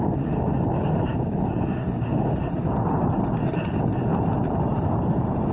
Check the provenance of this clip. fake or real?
real